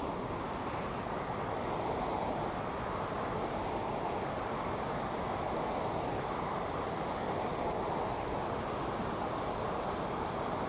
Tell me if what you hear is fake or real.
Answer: real